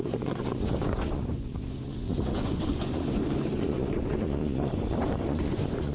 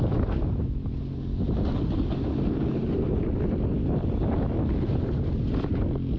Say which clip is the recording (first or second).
second